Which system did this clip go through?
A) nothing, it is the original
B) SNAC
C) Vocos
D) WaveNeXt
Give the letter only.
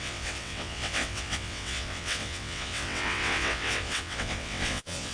D